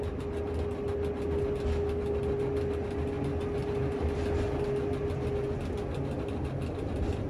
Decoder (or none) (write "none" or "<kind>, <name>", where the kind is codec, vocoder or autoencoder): none